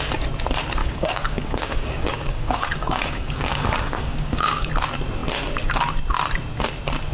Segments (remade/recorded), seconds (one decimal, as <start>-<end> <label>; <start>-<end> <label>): 0.0-0.8 recorded; 0.8-4.7 remade; 4.7-7.1 recorded